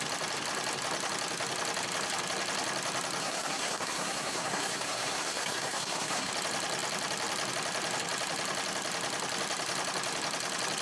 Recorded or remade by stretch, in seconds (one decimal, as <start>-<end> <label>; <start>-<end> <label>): 0.0-3.2 recorded; 3.2-6.3 remade; 6.3-10.8 recorded